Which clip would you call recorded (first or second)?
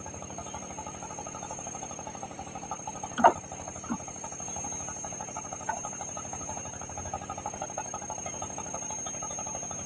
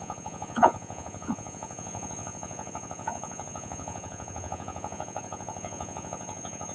first